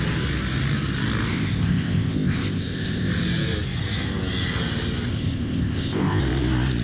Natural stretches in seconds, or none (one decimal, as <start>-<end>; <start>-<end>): 0.0-1.3; 3.1-5.1; 6.2-6.8